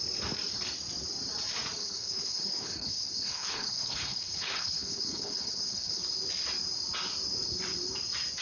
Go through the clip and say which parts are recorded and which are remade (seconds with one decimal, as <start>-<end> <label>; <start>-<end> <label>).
0.0-1.8 recorded; 1.8-6.0 remade; 6.0-8.4 recorded